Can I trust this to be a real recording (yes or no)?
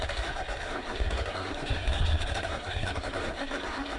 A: no